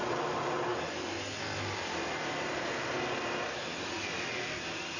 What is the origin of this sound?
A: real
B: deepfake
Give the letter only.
A